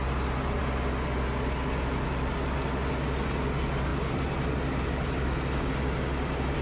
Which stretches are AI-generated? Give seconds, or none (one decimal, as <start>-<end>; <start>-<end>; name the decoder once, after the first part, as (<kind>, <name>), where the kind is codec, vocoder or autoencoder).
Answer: 3.9-5.7 (vocoder, BigVGAN v2)